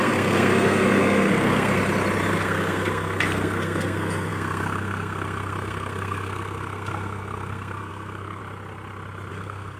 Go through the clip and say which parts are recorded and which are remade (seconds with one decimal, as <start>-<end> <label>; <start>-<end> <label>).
0.0-1.8 remade; 1.8-2.3 recorded; 2.3-8.4 remade; 8.4-9.3 recorded; 9.3-9.8 remade